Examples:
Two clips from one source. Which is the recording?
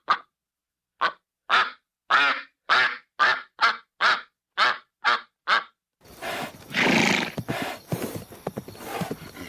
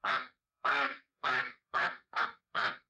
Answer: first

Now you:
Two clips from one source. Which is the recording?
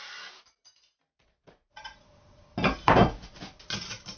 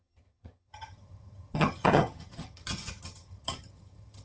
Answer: first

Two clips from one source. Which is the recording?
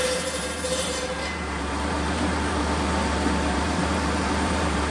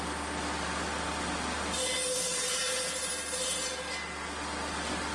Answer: second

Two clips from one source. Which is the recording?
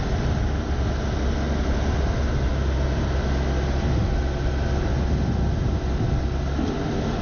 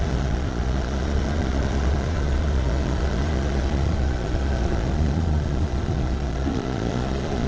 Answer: first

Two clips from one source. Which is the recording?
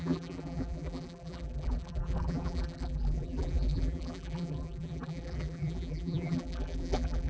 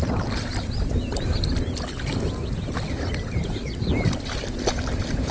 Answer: second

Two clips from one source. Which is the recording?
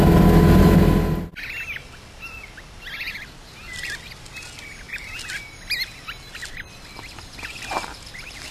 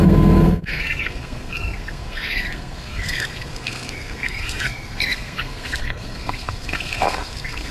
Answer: first